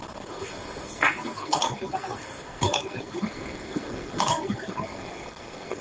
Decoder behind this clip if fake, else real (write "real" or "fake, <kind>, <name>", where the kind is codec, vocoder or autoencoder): fake, codec, SNAC